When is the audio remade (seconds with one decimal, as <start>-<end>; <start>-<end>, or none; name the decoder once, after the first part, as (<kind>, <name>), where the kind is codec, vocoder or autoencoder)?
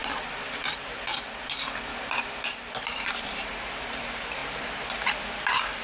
0.0-3.1 (vocoder, BigVGAN v2)